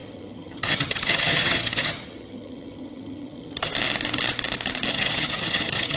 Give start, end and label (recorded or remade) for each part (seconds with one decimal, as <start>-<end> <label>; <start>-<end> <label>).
0.0-3.7 remade; 3.7-4.9 recorded; 4.9-6.0 remade